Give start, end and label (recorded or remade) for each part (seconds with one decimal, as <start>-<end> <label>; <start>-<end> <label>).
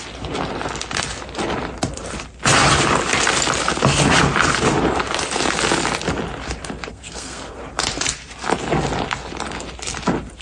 0.0-6.9 recorded; 6.9-7.6 remade; 7.6-10.4 recorded